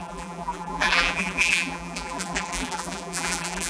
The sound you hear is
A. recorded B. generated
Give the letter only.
B